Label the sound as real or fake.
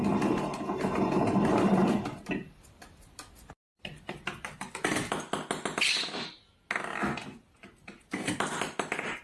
real